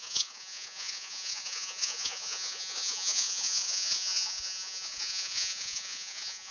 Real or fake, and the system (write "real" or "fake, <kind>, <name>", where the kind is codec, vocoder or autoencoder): fake, vocoder, Vocos